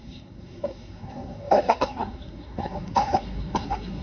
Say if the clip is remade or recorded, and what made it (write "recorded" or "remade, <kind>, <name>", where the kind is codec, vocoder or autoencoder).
remade, codec, SNAC